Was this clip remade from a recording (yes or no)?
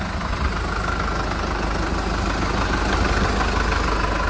no